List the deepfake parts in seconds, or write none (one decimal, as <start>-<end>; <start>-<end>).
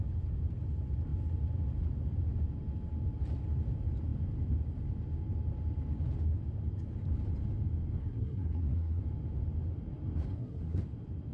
8.0-9.0; 10.3-10.8